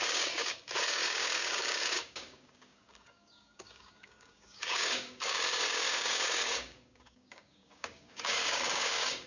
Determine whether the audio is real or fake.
fake